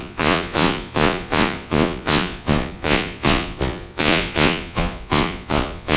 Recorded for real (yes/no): no